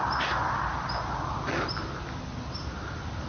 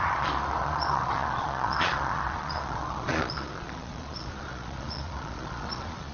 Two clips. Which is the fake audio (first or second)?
second